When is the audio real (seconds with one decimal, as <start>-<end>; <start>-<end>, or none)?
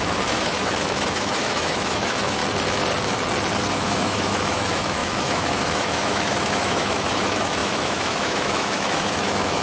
2.4-3.7